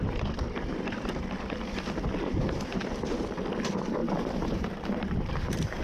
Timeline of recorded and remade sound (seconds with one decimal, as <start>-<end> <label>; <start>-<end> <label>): 0.0-2.7 recorded; 2.7-3.4 remade; 3.4-4.0 recorded; 4.0-5.8 remade

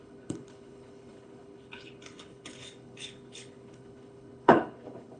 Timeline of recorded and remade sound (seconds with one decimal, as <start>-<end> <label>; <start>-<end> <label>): 0.0-5.2 remade

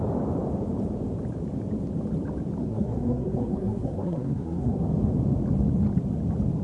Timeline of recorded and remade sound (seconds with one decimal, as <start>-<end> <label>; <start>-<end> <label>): 0.0-2.6 recorded; 2.6-4.8 remade; 4.8-6.6 recorded

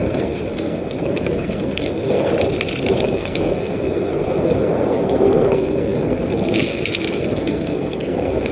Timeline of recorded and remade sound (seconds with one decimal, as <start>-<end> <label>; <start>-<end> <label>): 0.0-2.3 remade; 2.3-2.8 recorded; 2.8-8.5 remade

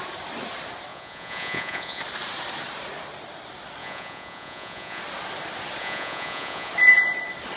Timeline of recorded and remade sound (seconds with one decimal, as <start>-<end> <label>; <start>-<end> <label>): 0.0-0.9 recorded; 0.9-2.0 remade; 2.0-3.8 recorded; 3.8-5.0 remade; 5.0-5.8 recorded; 5.8-6.7 remade; 6.7-7.6 recorded

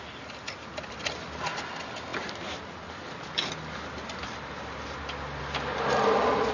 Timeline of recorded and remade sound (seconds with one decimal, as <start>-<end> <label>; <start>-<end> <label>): 0.0-6.5 recorded

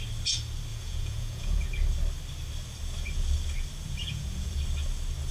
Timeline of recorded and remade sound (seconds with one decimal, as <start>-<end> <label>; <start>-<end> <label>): 0.0-0.7 recorded; 0.7-1.6 remade; 1.6-4.0 recorded; 4.0-4.5 remade; 4.5-5.3 recorded